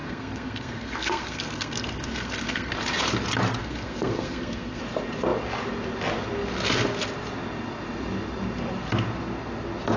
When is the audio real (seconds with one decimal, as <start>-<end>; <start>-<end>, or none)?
2.7-3.6; 4.8-10.0